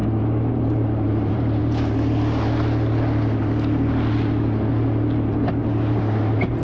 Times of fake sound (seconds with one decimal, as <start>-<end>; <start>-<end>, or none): 0.5-1.6; 5.6-6.6